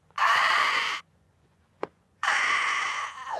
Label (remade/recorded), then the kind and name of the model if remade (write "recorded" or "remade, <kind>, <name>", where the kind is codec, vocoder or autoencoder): remade, vocoder, Vocos